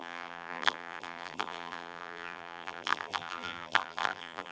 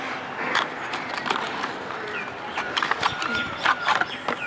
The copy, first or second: first